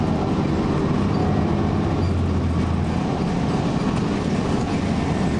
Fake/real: real